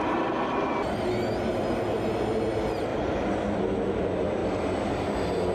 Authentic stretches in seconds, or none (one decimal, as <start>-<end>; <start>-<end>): 0.0-5.5